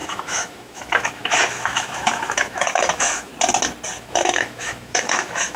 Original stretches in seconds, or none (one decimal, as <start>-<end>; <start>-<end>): 3.3-4.0